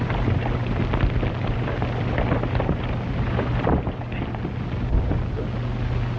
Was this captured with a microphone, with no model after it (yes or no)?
yes